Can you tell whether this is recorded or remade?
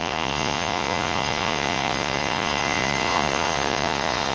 remade